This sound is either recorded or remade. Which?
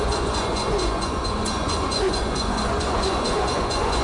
remade